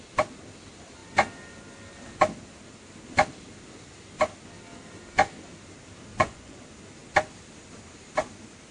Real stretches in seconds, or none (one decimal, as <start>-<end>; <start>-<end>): 0.0-6.1; 6.6-8.7

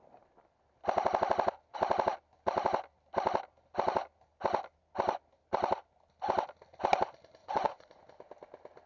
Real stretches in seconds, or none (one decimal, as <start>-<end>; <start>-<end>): 0.0-7.4; 8.0-8.9

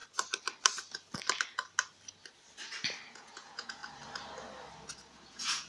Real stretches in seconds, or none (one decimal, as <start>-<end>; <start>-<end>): 0.0-3.1; 3.8-5.3

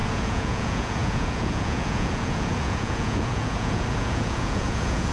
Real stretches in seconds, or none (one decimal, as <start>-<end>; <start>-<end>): none

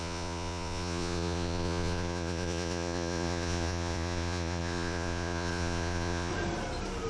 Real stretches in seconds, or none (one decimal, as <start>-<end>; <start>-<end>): 6.3-7.1

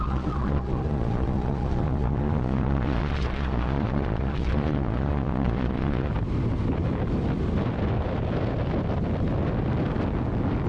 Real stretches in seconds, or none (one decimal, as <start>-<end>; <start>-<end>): 6.1-10.7

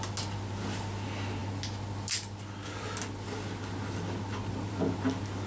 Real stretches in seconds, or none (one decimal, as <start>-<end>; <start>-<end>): 0.0-5.5